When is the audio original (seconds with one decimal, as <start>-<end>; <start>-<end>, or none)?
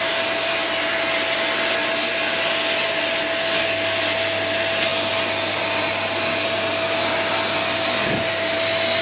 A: 0.0-9.0